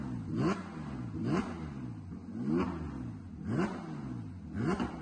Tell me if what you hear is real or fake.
real